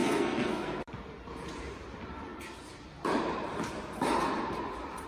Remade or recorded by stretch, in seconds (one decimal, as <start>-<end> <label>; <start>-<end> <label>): 0.0-0.8 remade; 0.8-5.1 recorded

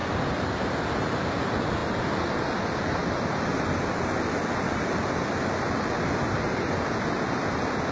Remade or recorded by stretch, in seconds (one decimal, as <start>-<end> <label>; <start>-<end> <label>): 0.0-7.9 recorded

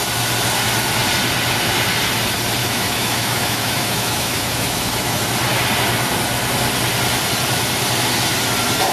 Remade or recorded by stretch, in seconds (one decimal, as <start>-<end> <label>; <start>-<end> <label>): 0.0-2.6 recorded; 2.6-5.2 remade; 5.2-8.9 recorded

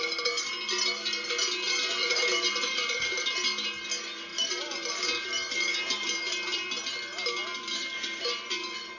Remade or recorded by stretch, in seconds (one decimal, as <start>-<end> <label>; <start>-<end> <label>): 0.0-2.0 recorded; 2.0-3.2 remade; 3.2-4.3 recorded; 4.3-5.0 remade; 5.0-9.0 recorded